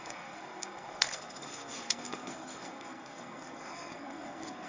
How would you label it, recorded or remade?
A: remade